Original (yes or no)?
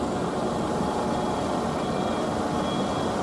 yes